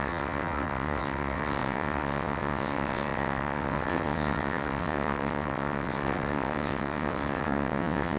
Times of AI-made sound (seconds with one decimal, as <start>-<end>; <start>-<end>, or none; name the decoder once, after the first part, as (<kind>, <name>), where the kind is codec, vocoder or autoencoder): 0.0-8.2 (vocoder, WaveNeXt)

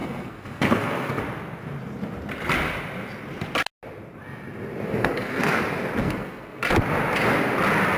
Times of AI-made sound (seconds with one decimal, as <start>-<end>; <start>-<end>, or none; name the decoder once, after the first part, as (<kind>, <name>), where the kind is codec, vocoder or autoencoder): 0.0-1.2 (codec, SNAC); 5.0-5.6; 6.0-6.6